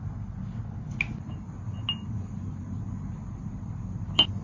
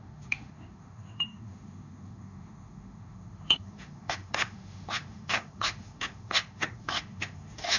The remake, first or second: second